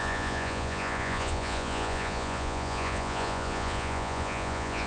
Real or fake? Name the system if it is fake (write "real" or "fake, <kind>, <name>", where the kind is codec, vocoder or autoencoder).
fake, vocoder, Vocos